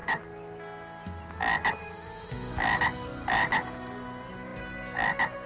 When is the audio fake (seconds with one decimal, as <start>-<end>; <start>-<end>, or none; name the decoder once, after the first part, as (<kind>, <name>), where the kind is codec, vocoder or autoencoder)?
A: none